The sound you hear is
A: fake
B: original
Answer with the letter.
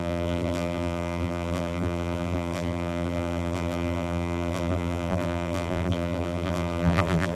A